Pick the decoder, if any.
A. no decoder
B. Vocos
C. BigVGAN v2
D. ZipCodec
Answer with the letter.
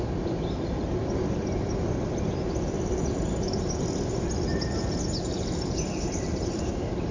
A